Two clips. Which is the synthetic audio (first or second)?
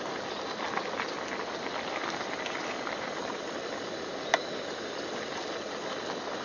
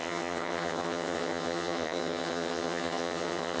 second